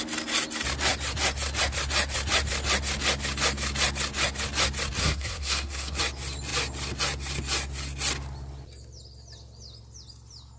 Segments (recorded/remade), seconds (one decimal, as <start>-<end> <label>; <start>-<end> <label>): 0.0-5.0 recorded; 5.0-6.0 remade; 6.0-10.6 recorded